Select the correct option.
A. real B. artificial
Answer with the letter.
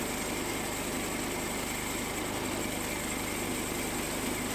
A